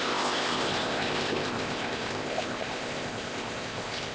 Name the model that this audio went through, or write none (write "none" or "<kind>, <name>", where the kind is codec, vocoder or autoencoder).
codec, ZipCodec